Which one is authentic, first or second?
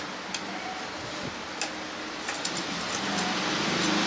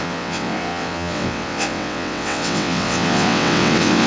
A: first